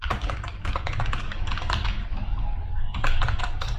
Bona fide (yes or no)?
no